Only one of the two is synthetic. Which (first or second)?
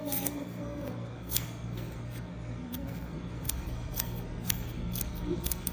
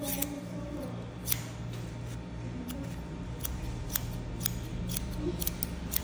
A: first